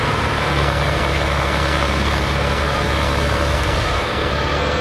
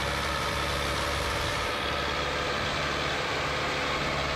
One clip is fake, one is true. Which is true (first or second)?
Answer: second